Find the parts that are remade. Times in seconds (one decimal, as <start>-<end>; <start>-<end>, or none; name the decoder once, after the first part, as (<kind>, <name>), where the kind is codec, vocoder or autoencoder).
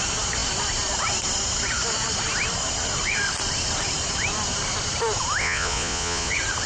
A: 5.4-6.3 (vocoder, Vocos)